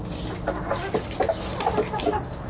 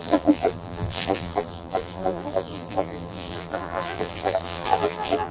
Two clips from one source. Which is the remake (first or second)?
second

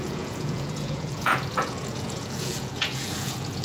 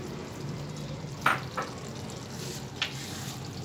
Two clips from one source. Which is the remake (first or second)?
first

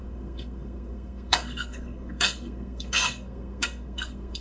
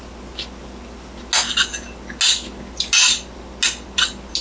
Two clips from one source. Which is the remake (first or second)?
first